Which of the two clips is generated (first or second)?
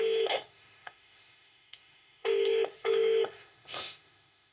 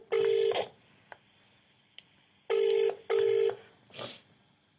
first